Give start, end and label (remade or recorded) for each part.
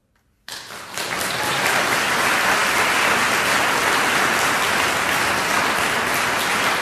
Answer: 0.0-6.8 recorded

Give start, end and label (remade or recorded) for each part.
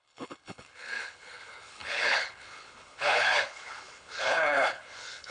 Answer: 0.0-5.3 remade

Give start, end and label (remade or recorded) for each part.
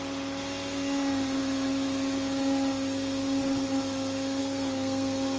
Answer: 0.0-4.4 recorded; 4.4-5.4 remade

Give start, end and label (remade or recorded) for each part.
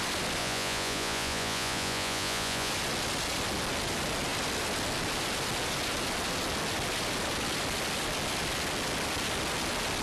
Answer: 0.0-0.4 recorded; 0.4-2.7 remade; 2.7-10.0 recorded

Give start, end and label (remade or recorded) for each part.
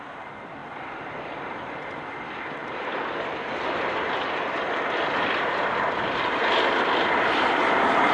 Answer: 0.0-0.6 recorded; 0.6-1.4 remade; 1.4-2.6 recorded; 2.6-7.5 remade; 7.5-8.1 recorded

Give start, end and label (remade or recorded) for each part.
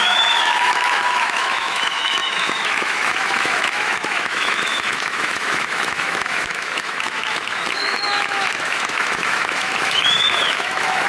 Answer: 0.0-11.1 remade